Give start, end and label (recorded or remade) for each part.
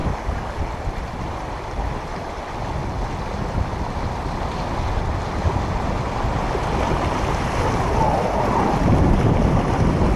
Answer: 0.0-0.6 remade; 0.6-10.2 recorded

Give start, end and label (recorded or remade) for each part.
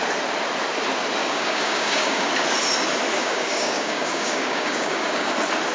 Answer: 0.0-1.2 recorded; 1.2-2.3 remade; 2.3-3.2 recorded; 3.2-5.3 remade; 5.3-5.7 recorded